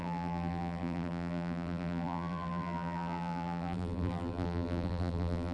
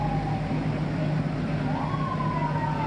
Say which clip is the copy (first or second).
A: first